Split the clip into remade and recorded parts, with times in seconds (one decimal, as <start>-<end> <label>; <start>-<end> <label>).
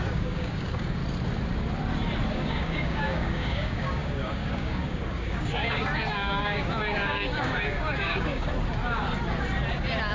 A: 0.0-1.0 remade; 1.0-2.3 recorded; 2.3-8.5 remade; 8.5-10.1 recorded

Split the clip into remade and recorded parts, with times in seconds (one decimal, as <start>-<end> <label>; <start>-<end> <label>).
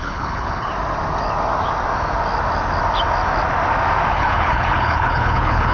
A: 0.0-0.7 remade; 0.7-4.1 recorded; 4.1-5.7 remade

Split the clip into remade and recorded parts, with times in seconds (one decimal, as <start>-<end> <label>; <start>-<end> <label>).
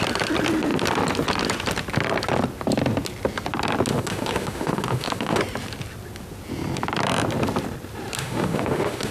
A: 0.0-3.9 recorded; 3.9-5.4 remade; 5.4-8.2 recorded; 8.2-9.1 remade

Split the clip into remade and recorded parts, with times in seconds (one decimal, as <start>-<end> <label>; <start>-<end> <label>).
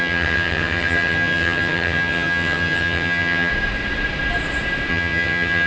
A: 0.0-3.5 remade; 3.5-4.9 recorded; 4.9-5.7 remade